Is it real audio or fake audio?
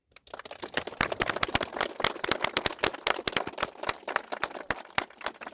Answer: real